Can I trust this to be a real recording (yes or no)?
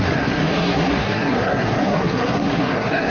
no